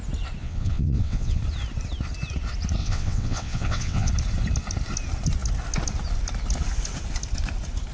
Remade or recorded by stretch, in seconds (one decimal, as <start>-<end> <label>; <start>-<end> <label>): 0.0-0.4 recorded; 0.4-1.4 remade; 1.4-2.8 recorded; 2.8-4.1 remade; 4.1-7.9 recorded